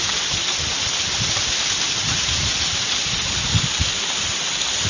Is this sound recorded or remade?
recorded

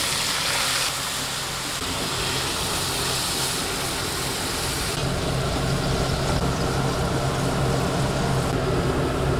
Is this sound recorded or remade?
recorded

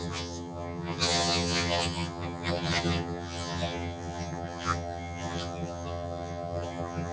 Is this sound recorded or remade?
remade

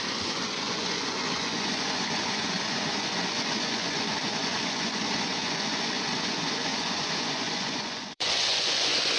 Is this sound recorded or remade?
remade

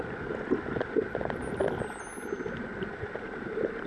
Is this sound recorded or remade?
recorded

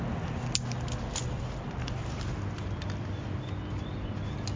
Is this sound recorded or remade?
recorded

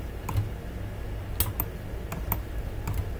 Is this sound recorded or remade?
recorded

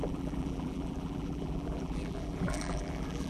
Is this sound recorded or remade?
remade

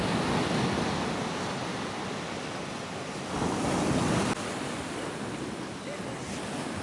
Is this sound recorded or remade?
recorded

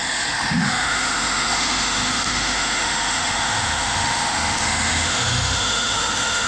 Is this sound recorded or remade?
remade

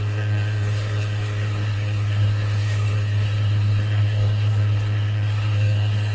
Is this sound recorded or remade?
remade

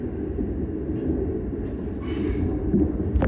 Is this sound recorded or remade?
recorded